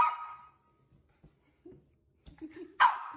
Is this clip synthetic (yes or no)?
no